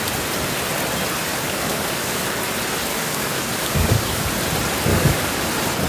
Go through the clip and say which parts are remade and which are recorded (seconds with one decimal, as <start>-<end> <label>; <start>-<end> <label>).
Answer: 0.0-1.3 recorded; 1.3-2.4 remade; 2.4-2.9 recorded; 2.9-4.3 remade; 4.3-4.9 recorded; 4.9-5.5 remade; 5.5-5.9 recorded